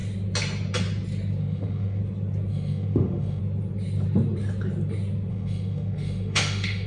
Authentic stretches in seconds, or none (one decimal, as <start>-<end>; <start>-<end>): 0.0-1.4; 2.0-2.5; 3.4-5.3